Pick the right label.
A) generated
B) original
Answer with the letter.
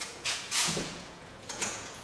A